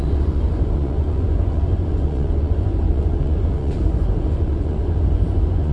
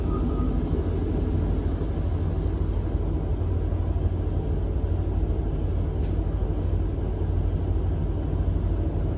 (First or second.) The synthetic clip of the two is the first